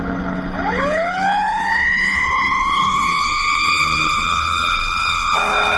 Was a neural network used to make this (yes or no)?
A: yes